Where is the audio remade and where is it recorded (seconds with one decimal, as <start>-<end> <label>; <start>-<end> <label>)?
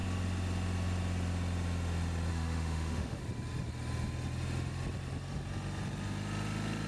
0.0-2.3 recorded; 2.3-3.2 remade; 3.2-6.9 recorded